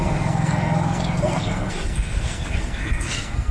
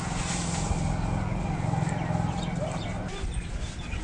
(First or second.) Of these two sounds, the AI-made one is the first